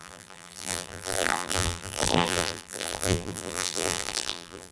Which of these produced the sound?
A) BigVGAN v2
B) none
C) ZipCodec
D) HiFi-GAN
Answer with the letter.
A